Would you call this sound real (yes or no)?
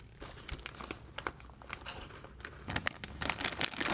yes